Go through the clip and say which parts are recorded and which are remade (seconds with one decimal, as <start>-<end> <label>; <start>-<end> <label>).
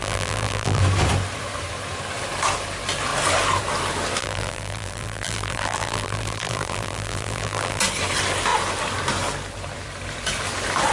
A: 0.0-0.8 remade; 0.8-4.2 recorded; 4.2-7.8 remade; 7.8-10.9 recorded